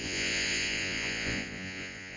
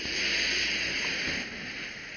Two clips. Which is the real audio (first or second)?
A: second